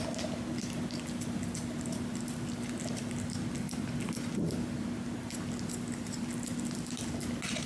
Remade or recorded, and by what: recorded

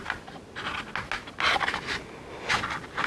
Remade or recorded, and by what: recorded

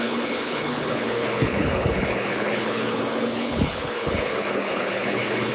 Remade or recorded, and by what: remade, codec, HILCodec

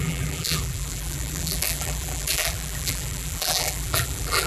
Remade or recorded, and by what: remade, vocoder, BigVGAN v2